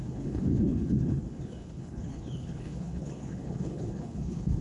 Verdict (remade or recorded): remade